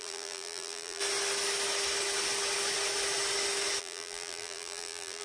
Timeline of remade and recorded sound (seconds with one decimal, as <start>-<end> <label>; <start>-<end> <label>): 0.0-1.0 remade; 1.0-3.8 recorded; 3.8-5.2 remade